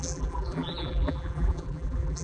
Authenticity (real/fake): fake